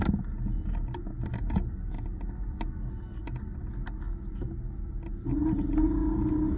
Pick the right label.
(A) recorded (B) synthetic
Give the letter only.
A